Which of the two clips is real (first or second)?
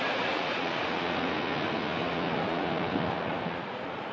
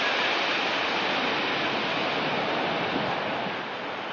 second